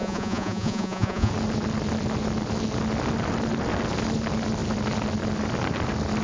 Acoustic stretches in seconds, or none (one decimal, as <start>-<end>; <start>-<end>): 1.3-6.2